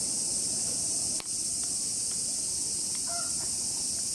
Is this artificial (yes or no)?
no